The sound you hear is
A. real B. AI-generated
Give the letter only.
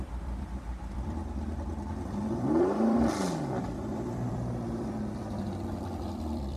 B